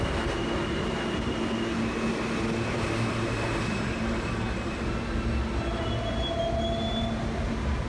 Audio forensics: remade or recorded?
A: recorded